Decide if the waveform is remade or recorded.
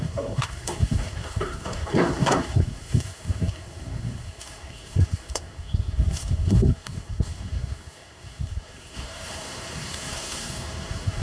remade